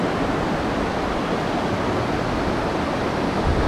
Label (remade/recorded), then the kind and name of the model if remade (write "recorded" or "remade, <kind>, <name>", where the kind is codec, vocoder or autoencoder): recorded